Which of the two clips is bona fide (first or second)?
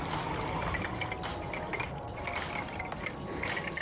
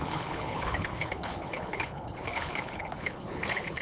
first